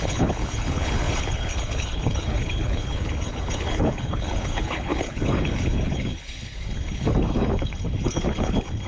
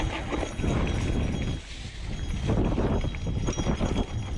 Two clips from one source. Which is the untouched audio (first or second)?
second